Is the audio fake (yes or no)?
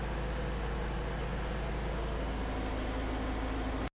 no